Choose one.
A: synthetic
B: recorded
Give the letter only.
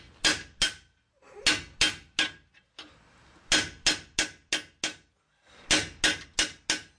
B